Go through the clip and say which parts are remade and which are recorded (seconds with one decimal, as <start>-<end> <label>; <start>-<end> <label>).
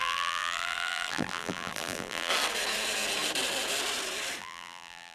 0.0-2.3 remade; 2.3-4.4 recorded; 4.4-5.1 remade